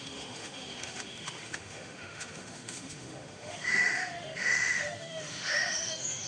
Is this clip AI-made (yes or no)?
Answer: yes